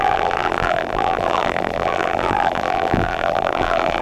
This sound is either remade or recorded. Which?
remade